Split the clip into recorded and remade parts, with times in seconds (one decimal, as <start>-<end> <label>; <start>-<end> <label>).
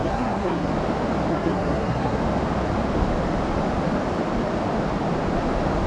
0.0-0.7 remade; 0.7-1.3 recorded; 1.3-2.2 remade; 2.2-5.9 recorded